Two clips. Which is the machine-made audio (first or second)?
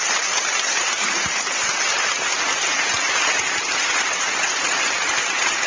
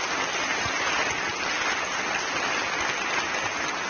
first